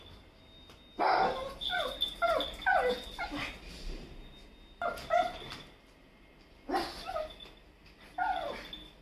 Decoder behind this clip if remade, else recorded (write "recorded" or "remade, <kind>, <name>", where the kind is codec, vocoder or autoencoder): recorded